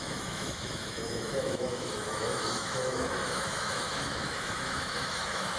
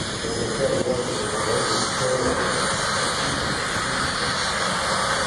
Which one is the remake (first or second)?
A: first